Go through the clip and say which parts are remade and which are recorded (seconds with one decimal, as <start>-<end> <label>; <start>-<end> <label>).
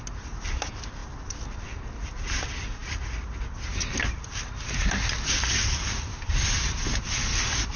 0.0-7.8 recorded